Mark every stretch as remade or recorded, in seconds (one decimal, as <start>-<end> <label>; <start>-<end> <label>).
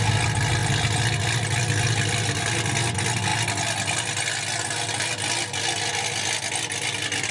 0.0-7.3 recorded